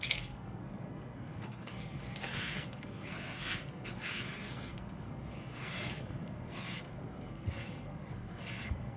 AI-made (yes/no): yes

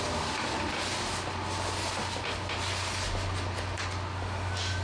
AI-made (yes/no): no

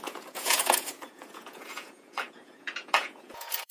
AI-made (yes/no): yes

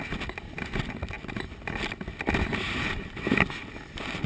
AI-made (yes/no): no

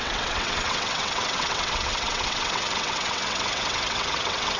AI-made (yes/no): yes